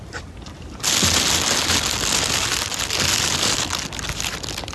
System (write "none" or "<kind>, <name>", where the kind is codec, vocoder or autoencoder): none